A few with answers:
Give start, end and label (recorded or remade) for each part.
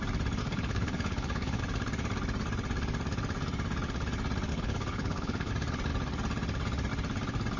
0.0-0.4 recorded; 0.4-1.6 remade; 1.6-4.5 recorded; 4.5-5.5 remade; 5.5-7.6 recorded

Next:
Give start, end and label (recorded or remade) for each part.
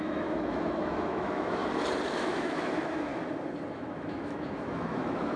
0.0-1.6 remade; 1.6-2.2 recorded; 2.2-3.1 remade; 3.1-3.7 recorded; 3.7-5.4 remade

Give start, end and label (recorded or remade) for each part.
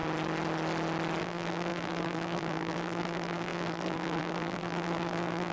0.0-1.2 recorded; 1.2-5.5 remade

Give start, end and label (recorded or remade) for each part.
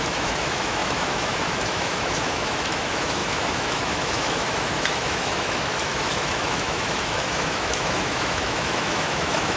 0.0-9.6 remade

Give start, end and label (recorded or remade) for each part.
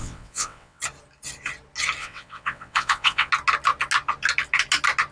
0.0-0.8 remade; 0.8-2.0 recorded; 2.0-3.3 remade; 3.3-5.1 recorded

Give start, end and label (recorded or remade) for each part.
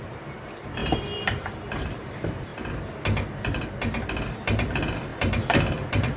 0.0-2.5 remade; 2.5-4.3 recorded; 4.3-6.2 remade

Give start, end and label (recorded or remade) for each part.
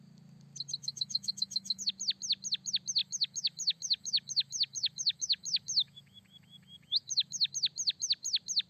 0.0-0.8 recorded; 0.8-1.9 remade; 1.9-3.0 recorded; 3.0-7.5 remade; 7.5-8.7 recorded